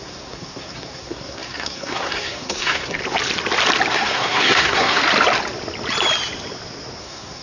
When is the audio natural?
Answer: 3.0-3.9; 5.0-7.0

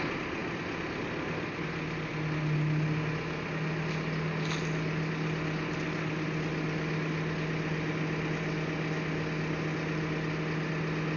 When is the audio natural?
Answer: 0.0-11.2

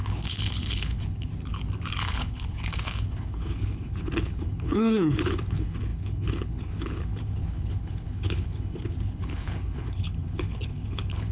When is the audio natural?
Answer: 1.3-2.0

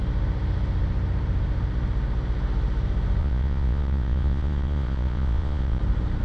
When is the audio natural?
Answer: 0.0-3.2; 5.8-6.2

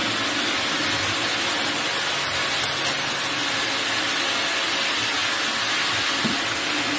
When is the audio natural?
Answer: 0.0-7.0

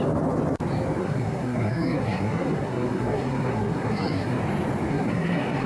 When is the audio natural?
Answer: 0.0-1.0; 4.4-4.9

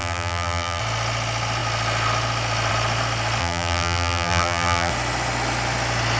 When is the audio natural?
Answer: 0.8-3.4; 4.9-6.2